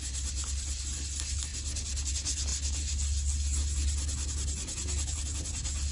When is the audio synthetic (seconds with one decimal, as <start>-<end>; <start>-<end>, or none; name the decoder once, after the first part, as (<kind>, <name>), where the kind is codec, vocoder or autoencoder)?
none